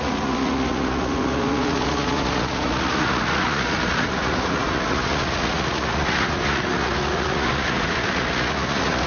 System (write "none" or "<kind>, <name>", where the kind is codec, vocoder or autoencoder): vocoder, Vocos